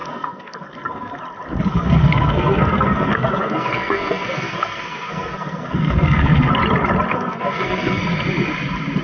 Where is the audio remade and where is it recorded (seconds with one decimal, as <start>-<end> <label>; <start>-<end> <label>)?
0.0-1.2 remade; 1.2-1.7 recorded; 1.7-6.5 remade; 6.5-7.1 recorded; 7.1-8.0 remade; 8.0-9.0 recorded